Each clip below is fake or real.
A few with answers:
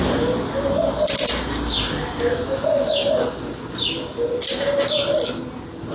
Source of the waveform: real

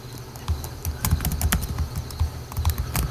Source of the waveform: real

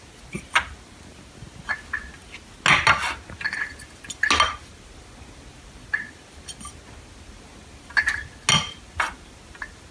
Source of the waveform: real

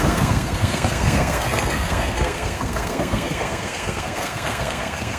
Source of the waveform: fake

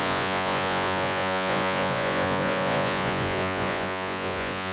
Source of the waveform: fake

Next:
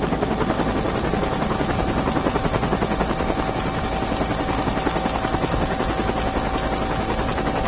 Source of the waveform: real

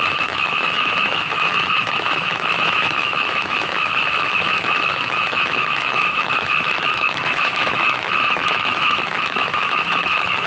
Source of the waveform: fake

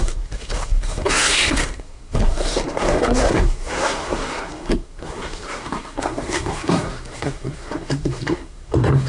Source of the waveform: fake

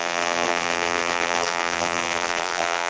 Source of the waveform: fake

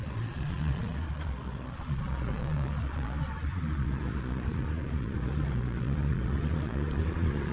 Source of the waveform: fake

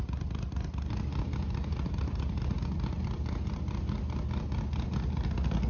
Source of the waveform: real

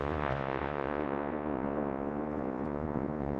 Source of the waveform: fake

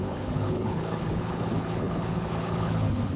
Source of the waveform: fake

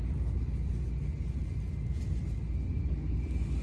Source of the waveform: real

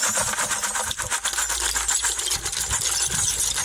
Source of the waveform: real